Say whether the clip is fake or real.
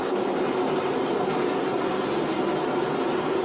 real